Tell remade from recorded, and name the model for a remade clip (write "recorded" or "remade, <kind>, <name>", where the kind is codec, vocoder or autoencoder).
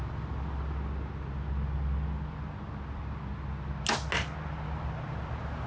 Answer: recorded